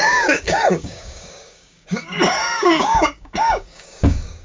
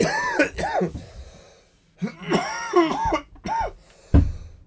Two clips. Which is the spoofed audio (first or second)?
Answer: first